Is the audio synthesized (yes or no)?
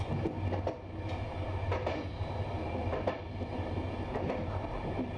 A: no